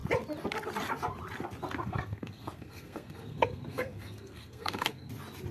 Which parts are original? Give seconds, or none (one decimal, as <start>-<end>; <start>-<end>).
0.0-1.8; 5.1-5.5